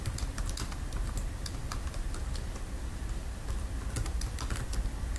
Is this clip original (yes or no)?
yes